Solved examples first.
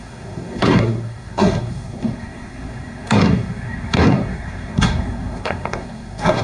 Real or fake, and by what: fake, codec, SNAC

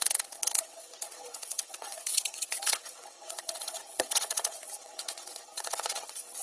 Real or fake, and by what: fake, vocoder, WaveNeXt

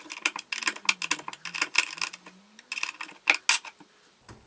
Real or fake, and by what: real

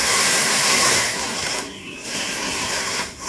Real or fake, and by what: fake, codec, SNAC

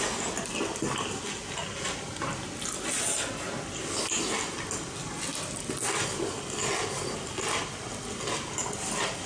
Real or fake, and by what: real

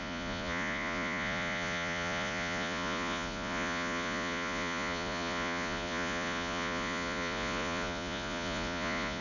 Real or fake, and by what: fake, vocoder, Vocos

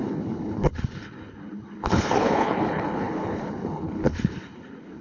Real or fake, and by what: fake, codec, HILCodec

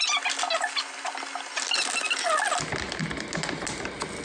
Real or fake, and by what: real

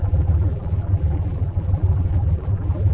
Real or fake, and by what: fake, vocoder, BigVGAN v2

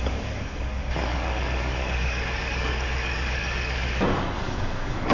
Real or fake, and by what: fake, codec, DAC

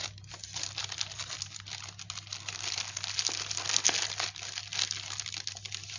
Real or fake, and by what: real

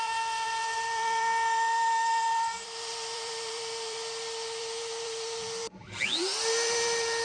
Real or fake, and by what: fake, vocoder, BigVGAN v2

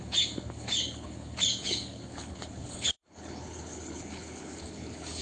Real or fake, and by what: fake, codec, HILCodec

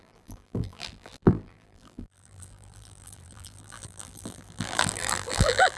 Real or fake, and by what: fake, vocoder, BigVGAN v2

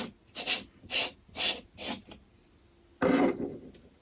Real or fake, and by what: real